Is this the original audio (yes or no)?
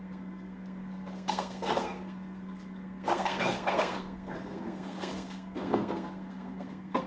no